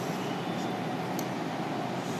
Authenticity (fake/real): real